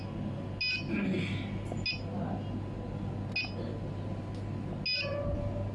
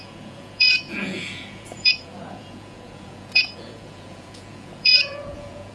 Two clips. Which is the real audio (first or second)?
first